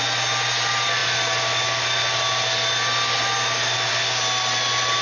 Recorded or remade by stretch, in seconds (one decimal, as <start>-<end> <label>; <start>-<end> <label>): 0.0-5.0 recorded